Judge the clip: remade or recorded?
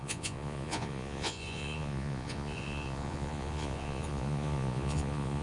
remade